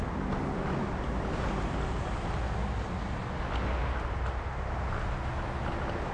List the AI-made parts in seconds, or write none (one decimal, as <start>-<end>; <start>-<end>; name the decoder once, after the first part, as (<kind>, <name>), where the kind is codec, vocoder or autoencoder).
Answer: none